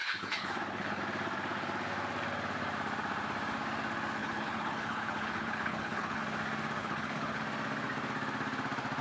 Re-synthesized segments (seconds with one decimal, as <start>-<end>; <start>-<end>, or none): 0.0-1.0; 4.2-6.2; 6.8-7.4